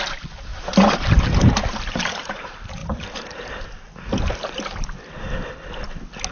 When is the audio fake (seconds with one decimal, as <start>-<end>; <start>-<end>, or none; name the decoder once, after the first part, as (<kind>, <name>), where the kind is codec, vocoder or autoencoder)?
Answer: 0.5-2.4 (vocoder, BigVGAN v2); 2.8-3.5